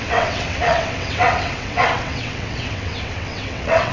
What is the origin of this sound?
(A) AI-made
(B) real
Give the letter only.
A